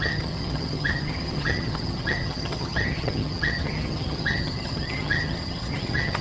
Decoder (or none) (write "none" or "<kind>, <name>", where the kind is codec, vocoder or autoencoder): vocoder, HiFi-GAN